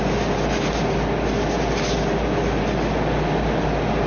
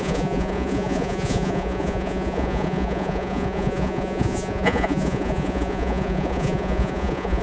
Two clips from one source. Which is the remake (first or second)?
second